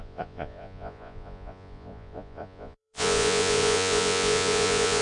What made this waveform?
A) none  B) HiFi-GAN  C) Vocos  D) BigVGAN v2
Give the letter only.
C